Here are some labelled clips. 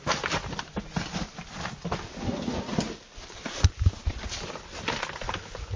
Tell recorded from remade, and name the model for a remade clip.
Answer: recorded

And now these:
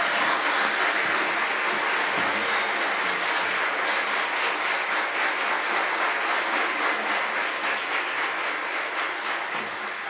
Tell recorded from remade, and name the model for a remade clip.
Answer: recorded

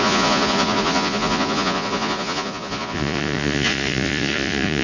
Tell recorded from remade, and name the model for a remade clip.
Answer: remade, vocoder, Vocos